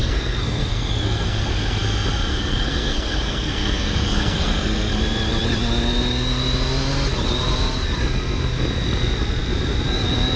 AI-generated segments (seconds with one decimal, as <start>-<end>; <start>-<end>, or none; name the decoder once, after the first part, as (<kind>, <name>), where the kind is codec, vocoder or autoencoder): 0.0-1.8 (codec, SNAC); 2.3-4.9